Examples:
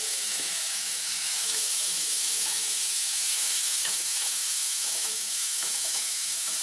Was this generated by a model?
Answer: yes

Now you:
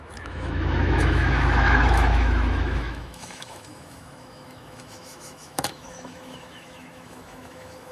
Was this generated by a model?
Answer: yes